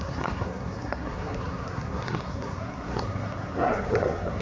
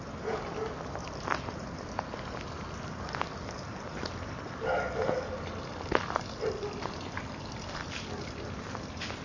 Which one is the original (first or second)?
second